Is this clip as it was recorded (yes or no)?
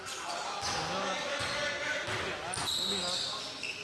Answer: yes